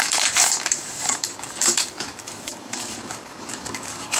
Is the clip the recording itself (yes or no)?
no